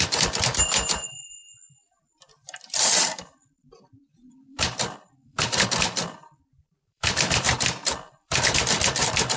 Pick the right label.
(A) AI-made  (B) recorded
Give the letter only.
A